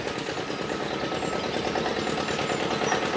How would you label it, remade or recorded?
recorded